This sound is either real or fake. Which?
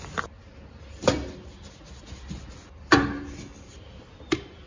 real